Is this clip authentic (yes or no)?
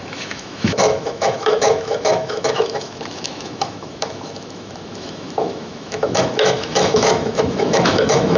no